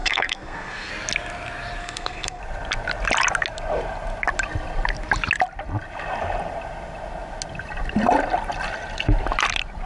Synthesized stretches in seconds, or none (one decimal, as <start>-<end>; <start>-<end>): 0.0-0.9; 1.8-2.4